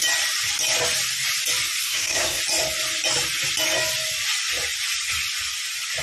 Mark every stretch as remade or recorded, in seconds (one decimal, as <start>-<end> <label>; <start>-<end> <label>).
0.0-1.8 recorded; 1.8-2.4 remade; 2.4-6.0 recorded